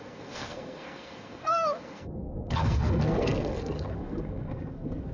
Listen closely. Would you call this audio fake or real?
fake